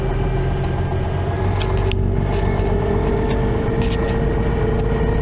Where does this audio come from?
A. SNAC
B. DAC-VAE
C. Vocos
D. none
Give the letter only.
D